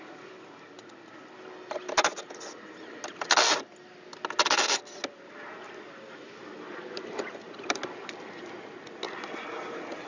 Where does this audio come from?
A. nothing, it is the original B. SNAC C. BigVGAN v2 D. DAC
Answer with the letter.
A